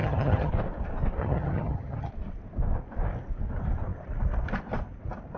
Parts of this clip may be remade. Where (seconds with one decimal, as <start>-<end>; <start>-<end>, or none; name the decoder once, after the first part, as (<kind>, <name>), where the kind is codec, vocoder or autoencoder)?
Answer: 0.0-0.5 (vocoder, HiFi-GAN); 1.2-2.1